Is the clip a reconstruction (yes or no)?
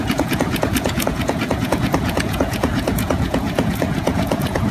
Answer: yes